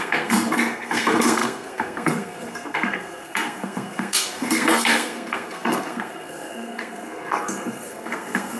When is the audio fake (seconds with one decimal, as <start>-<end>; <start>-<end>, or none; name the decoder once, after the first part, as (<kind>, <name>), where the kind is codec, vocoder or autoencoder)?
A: 0.0-8.6 (codec, SNAC)